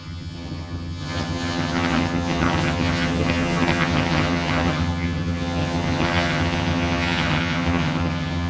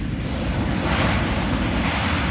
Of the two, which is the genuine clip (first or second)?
second